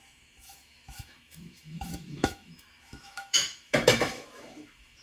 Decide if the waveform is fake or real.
fake